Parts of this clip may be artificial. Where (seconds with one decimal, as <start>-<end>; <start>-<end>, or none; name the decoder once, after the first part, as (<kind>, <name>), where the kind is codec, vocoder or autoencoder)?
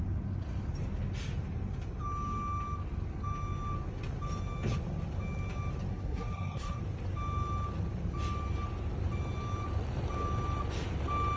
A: 5.9-6.8 (codec, SNAC)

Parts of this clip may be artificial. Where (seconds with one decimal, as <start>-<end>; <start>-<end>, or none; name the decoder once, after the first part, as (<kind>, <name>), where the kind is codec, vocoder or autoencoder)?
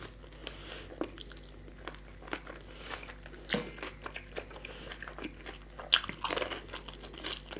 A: none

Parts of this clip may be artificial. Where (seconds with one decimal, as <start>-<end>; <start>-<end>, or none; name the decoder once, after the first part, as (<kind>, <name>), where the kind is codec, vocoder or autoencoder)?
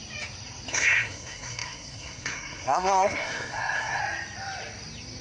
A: 0.7-4.0 (codec, SNAC)